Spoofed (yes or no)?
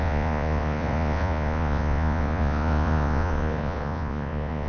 yes